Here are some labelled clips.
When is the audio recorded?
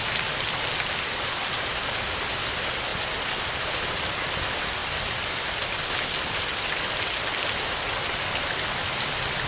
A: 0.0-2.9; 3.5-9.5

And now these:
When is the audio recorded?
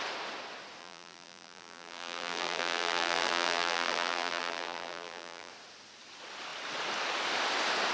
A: 0.0-0.8; 5.5-7.9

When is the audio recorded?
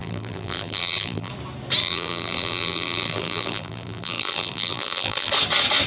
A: 1.3-1.8; 5.3-5.9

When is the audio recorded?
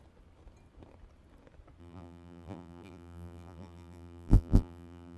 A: 0.0-1.8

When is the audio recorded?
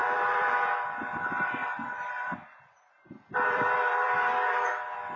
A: 0.5-1.6; 4.7-5.2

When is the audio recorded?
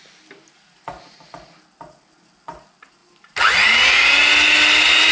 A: 0.0-3.0; 3.8-5.1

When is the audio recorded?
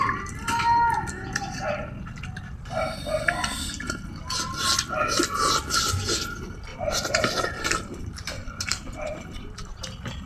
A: 0.0-6.7; 9.8-10.3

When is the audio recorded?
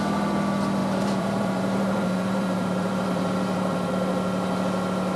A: 0.0-0.8; 3.9-5.2